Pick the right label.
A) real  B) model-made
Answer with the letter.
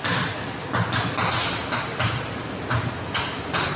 A